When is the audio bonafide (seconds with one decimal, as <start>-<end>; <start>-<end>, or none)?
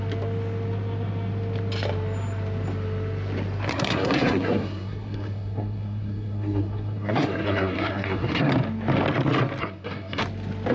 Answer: 0.0-3.7; 8.5-9.6; 10.2-10.7